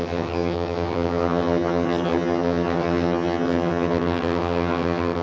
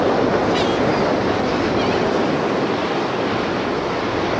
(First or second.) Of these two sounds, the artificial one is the first